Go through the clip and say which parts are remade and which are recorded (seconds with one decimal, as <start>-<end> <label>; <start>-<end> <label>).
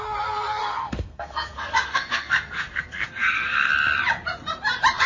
0.0-0.6 recorded; 0.6-3.7 remade; 3.7-5.1 recorded